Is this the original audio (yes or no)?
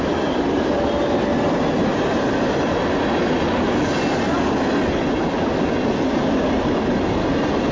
yes